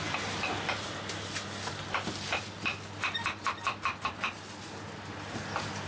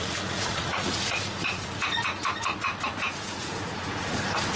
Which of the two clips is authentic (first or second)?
first